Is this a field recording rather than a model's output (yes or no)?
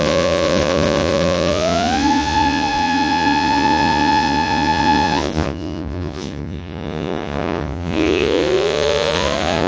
no